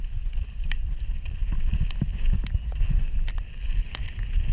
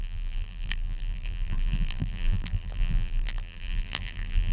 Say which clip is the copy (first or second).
second